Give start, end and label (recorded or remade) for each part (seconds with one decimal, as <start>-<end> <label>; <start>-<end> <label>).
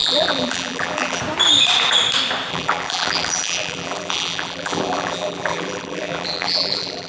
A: 0.0-1.2 remade; 1.2-2.5 recorded; 2.5-7.1 remade